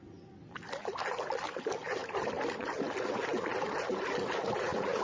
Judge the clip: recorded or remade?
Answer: recorded